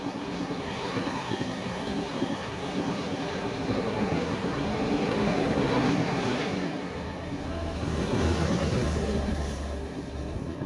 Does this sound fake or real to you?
fake